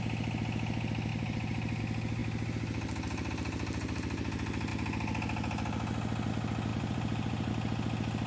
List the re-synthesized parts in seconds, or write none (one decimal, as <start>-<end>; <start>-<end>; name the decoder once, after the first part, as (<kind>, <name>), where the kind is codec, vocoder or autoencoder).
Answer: 1.1-1.8 (vocoder, BigVGAN v2); 6.7-7.5